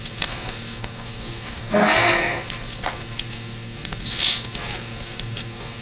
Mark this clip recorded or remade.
remade